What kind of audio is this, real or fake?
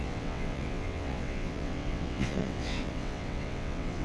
fake